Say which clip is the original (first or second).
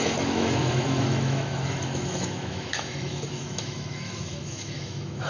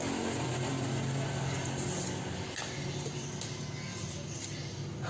second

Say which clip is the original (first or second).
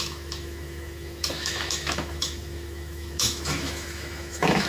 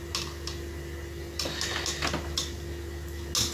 second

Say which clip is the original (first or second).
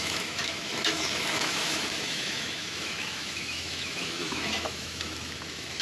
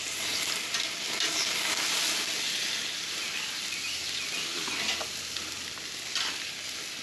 second